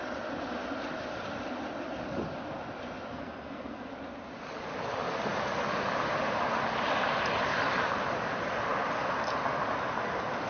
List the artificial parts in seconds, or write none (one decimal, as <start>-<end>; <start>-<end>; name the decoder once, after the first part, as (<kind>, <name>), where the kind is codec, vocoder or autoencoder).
3.1-3.9 (codec, SNAC)